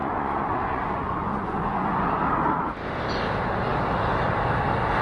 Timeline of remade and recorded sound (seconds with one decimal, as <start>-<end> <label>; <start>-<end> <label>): 0.0-2.1 remade; 2.1-5.0 recorded